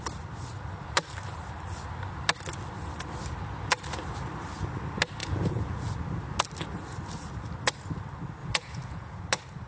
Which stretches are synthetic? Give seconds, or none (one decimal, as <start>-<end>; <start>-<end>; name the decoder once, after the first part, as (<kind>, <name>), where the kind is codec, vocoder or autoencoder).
5.2-5.9 (vocoder, Vocos); 8.4-9.2